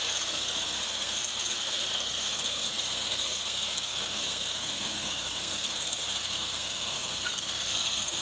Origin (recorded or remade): remade